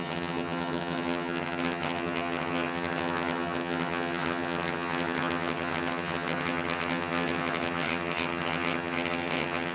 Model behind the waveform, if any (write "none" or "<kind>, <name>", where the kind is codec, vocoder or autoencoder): vocoder, HiFi-GAN